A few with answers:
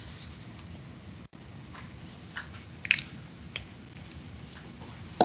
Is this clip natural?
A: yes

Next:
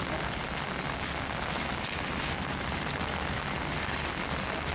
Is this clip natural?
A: yes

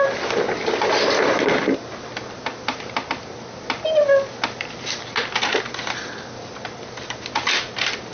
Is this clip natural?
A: yes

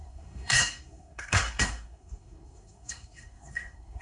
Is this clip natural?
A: no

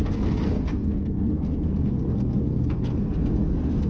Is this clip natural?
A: no